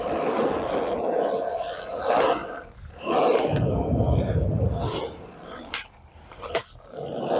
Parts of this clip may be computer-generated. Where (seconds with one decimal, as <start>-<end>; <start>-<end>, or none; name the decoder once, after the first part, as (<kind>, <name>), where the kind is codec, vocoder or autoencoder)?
2.4-6.5 (vocoder, BigVGAN v2)